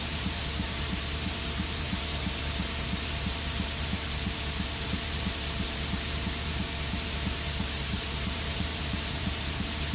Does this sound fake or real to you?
fake